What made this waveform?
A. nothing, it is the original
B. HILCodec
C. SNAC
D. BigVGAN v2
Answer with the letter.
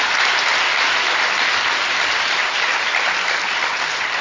A